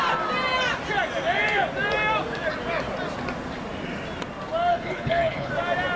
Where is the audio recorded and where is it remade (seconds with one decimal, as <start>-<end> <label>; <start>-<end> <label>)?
0.0-4.7 recorded; 4.7-5.5 remade; 5.5-6.0 recorded